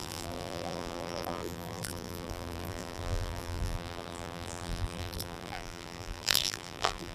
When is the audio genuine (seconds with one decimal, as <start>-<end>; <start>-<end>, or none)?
none